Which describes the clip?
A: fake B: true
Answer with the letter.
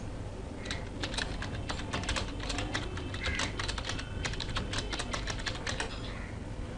B